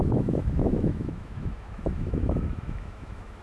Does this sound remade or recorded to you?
remade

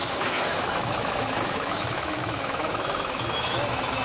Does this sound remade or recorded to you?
remade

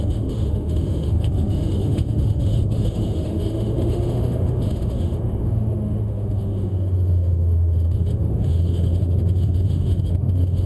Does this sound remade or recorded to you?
remade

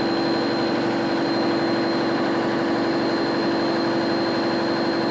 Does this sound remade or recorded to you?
recorded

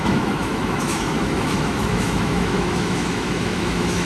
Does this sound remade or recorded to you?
remade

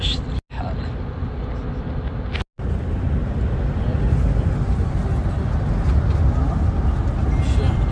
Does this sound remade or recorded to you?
recorded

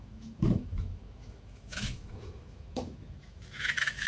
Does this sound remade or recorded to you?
remade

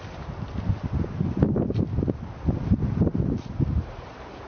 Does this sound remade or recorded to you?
recorded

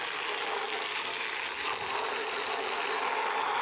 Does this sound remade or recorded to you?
recorded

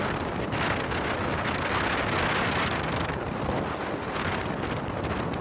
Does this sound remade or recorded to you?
recorded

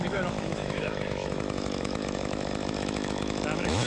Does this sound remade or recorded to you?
remade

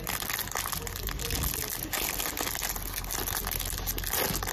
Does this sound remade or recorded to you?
recorded